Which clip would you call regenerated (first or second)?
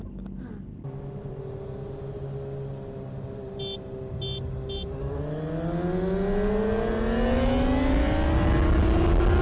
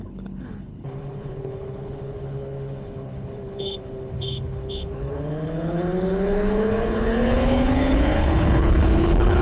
second